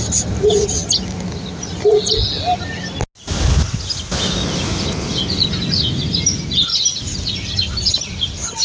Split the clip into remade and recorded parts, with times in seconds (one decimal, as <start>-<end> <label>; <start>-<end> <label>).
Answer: 0.0-8.6 recorded